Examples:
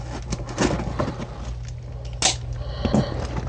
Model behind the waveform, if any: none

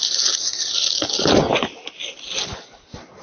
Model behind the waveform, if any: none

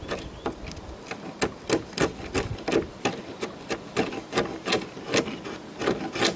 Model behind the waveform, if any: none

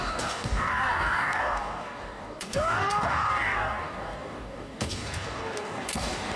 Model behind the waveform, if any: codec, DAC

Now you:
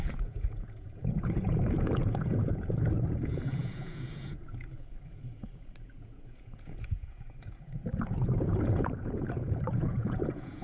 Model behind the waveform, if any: vocoder, Vocos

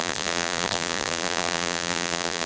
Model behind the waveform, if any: vocoder, BigVGAN v2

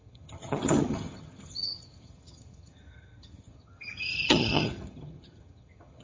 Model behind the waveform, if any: vocoder, HiFi-GAN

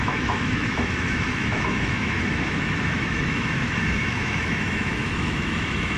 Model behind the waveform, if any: autoencoder, DAC-VAE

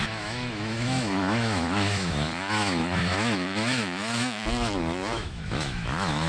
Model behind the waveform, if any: autoencoder, DAC-VAE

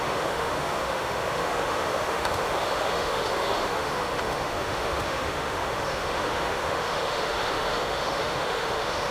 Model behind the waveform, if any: autoencoder, DAC-VAE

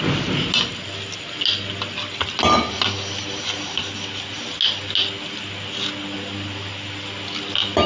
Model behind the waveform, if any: none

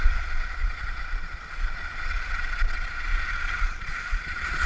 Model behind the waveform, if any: vocoder, Vocos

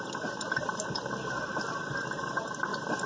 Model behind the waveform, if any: vocoder, BigVGAN v2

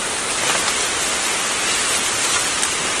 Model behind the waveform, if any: none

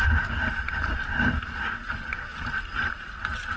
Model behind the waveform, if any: none